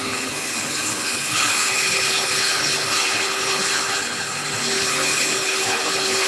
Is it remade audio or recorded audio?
remade